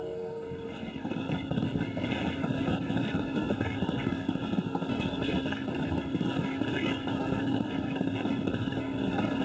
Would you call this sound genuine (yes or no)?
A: no